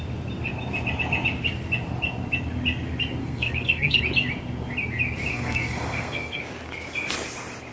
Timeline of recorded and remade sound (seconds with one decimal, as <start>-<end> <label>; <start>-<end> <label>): 0.0-3.2 recorded; 3.2-4.0 remade; 4.0-5.3 recorded; 5.3-6.4 remade; 6.4-7.7 recorded